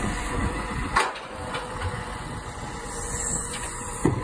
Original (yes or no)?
no